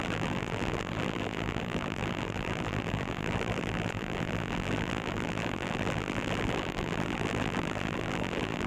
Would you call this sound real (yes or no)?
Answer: no